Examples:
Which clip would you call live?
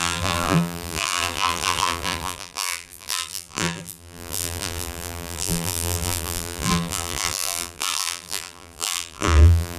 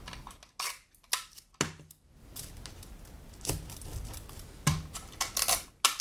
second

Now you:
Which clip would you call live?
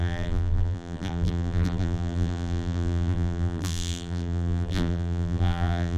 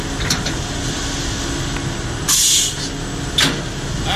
second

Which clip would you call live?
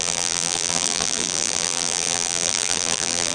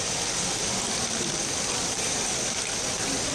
second